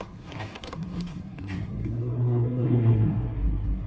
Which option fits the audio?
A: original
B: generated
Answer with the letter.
B